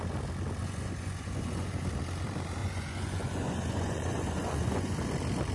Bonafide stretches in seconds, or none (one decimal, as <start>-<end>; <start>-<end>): 0.0-0.6; 1.9-2.6; 5.0-5.5